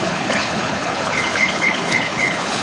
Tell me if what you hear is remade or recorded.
remade